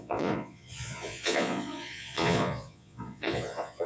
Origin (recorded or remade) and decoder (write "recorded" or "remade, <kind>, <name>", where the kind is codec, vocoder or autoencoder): remade, vocoder, Vocos